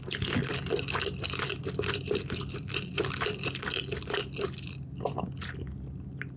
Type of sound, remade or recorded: recorded